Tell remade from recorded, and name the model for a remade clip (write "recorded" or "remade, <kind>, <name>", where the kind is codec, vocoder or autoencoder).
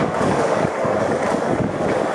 remade, codec, DAC